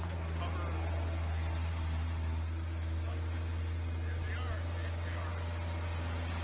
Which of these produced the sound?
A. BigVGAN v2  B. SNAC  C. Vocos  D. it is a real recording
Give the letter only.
D